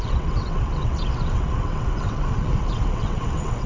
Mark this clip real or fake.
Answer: fake